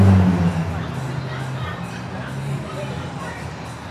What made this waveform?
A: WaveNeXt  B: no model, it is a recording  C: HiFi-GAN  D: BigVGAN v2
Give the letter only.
B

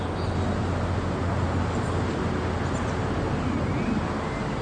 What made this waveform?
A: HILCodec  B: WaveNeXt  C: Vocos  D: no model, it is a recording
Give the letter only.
D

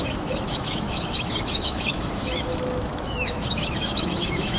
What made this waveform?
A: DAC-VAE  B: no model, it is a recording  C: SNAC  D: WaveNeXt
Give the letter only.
A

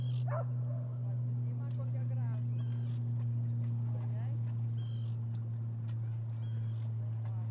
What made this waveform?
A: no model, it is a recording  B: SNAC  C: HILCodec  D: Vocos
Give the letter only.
A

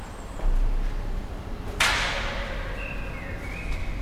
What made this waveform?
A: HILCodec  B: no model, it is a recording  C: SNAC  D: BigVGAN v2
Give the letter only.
B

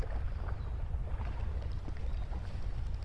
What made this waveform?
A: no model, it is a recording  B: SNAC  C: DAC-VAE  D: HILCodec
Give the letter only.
A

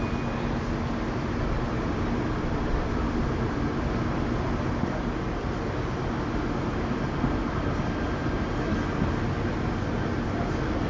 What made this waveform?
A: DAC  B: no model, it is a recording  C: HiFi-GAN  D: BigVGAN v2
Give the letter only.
B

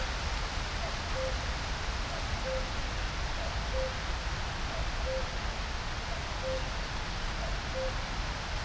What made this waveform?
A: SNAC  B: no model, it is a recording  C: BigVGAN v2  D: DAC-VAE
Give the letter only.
B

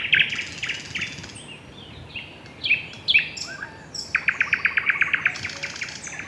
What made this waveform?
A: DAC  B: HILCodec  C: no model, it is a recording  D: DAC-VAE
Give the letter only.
C